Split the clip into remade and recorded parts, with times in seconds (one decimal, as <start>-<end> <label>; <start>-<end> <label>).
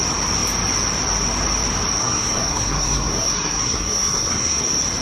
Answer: 0.0-2.0 recorded; 2.0-4.6 remade; 4.6-5.0 recorded